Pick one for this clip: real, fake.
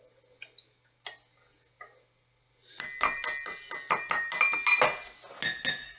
real